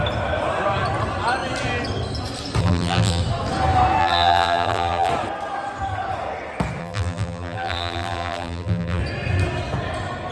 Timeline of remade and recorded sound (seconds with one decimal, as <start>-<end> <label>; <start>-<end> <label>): 0.0-2.6 recorded; 2.6-3.2 remade; 3.2-4.0 recorded; 4.0-5.1 remade; 5.1-6.8 recorded; 6.8-9.0 remade; 9.0-10.3 recorded